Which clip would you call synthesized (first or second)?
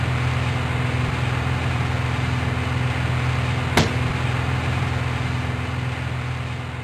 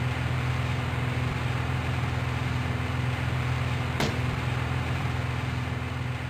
second